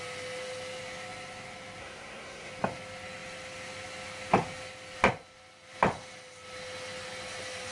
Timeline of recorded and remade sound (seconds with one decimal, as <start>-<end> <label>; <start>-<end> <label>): 0.0-1.8 recorded; 1.8-2.5 remade; 2.5-7.7 recorded